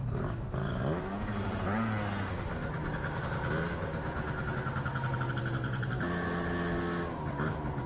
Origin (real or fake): real